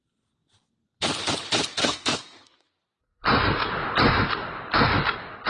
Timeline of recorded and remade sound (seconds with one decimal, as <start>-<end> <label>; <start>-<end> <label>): 0.0-1.8 recorded; 1.8-2.7 remade; 2.7-5.5 recorded